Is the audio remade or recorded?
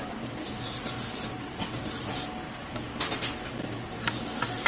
recorded